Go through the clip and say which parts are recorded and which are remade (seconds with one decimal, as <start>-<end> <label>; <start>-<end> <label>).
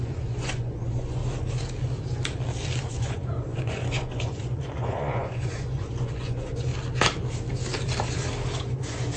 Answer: 0.0-1.2 remade; 1.2-2.9 recorded; 2.9-6.7 remade; 6.7-8.6 recorded; 8.6-9.2 remade